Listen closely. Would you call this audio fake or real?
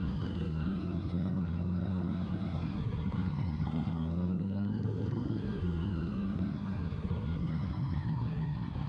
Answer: fake